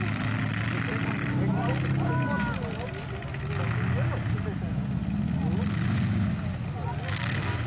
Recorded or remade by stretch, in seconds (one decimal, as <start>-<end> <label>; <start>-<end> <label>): 0.0-7.7 recorded